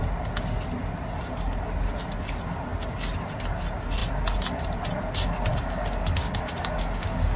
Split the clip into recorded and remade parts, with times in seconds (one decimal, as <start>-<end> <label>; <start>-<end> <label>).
0.0-5.5 recorded; 5.5-7.4 remade